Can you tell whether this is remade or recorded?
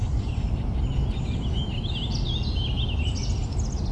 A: recorded